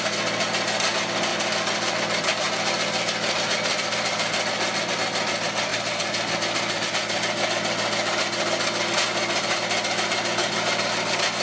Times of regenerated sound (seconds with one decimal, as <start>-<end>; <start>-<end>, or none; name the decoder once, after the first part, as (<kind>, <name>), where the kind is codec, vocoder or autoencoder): 1.3-4.9 (vocoder, BigVGAN v2); 5.7-6.9